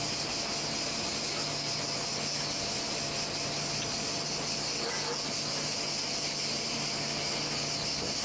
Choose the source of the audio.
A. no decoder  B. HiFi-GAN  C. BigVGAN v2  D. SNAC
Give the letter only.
A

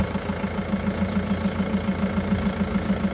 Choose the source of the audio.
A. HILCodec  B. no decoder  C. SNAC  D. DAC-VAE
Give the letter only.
B